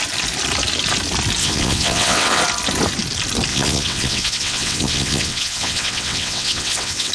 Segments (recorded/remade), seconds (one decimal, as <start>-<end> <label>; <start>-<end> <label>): 0.0-1.4 recorded; 1.4-2.4 remade; 2.4-3.5 recorded; 3.5-7.1 remade